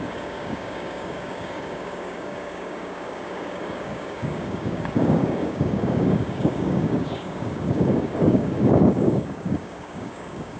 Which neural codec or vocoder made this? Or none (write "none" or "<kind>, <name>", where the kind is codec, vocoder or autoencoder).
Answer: codec, DAC